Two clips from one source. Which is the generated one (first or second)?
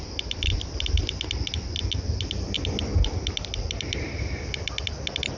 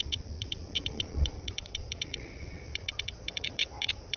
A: second